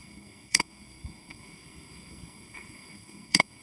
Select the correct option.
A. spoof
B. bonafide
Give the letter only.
A